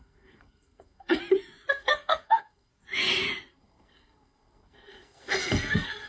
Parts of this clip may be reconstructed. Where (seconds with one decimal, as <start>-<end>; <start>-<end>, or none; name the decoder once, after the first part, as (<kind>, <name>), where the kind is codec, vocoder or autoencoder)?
0.0-1.2 (codec, SNAC); 1.7-2.7; 3.5-6.1